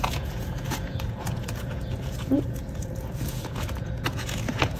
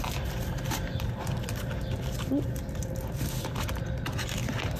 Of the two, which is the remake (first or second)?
first